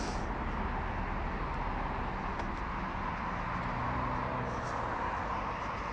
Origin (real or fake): real